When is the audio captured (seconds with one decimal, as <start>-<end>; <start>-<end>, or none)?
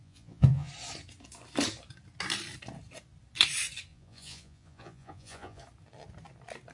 0.7-3.9; 5.6-6.7